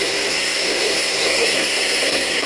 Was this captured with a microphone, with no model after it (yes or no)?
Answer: no